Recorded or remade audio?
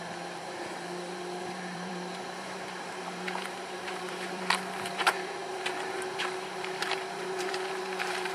remade